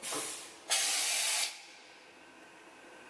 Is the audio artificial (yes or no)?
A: no